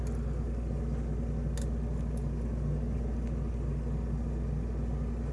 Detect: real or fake real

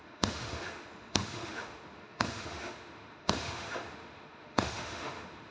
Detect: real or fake fake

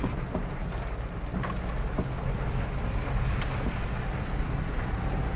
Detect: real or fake real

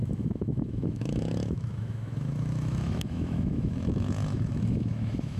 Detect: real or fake fake